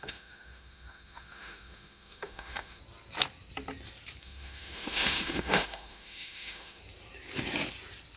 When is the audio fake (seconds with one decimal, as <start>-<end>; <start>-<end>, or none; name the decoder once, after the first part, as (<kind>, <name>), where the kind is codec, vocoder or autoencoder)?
0.0-2.8 (autoencoder, DAC-VAE); 4.2-6.8